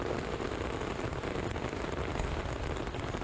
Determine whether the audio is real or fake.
real